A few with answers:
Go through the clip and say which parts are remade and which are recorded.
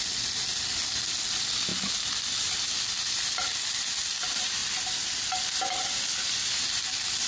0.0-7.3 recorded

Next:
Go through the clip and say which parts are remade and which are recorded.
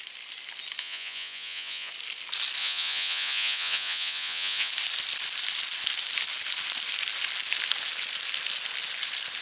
0.0-0.8 recorded; 0.8-1.9 remade; 1.9-2.6 recorded; 2.6-4.7 remade; 4.7-9.4 recorded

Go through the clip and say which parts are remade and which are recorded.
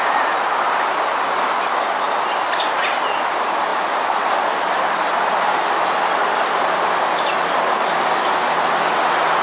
0.0-9.4 recorded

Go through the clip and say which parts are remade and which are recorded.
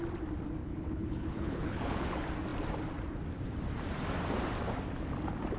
0.0-0.6 recorded; 0.6-2.0 remade; 2.0-5.6 recorded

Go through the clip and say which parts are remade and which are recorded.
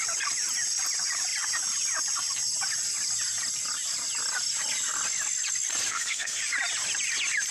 0.0-5.9 recorded; 5.9-6.4 remade; 6.4-7.5 recorded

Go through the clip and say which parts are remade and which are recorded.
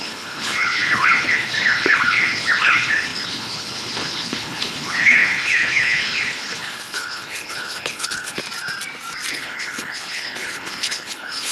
0.0-8.4 remade; 8.4-9.3 recorded; 9.3-11.5 remade